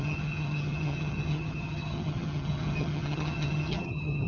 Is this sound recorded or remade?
remade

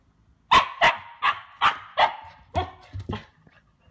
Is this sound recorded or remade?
recorded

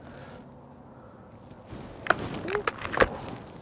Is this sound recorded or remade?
recorded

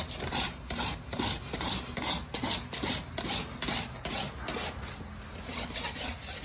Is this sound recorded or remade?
recorded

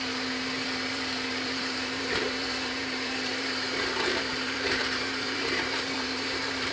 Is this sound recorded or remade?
remade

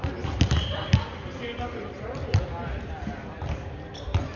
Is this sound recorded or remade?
recorded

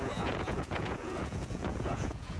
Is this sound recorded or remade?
remade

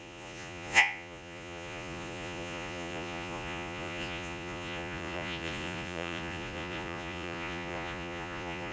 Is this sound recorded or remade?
remade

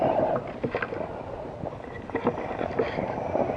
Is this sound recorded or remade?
recorded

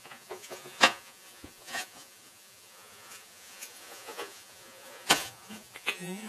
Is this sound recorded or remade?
remade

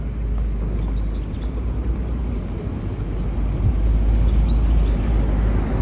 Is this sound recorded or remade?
recorded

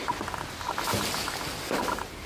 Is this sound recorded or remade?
recorded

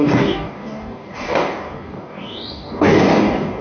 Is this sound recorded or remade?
remade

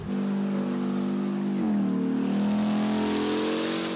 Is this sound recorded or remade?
recorded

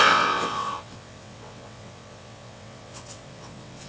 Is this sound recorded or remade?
remade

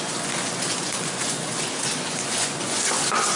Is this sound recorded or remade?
remade